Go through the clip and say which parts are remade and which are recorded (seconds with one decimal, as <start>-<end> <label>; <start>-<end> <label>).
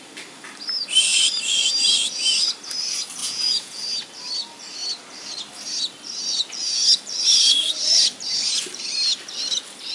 0.0-3.2 recorded; 3.2-3.8 remade; 3.8-9.9 recorded